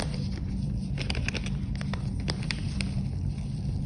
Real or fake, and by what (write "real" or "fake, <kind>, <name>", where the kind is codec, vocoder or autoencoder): real